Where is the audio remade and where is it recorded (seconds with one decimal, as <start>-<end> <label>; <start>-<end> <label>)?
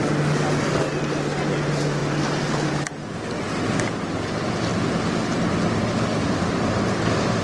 0.0-7.4 recorded